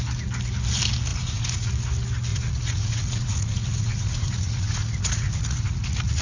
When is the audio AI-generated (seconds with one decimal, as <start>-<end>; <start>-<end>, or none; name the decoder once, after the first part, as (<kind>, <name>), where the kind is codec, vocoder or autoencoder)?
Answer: 1.1-1.7 (vocoder, Vocos); 2.3-6.2